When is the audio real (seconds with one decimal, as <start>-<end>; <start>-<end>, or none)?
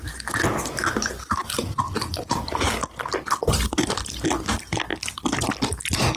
0.0-1.0; 2.7-6.2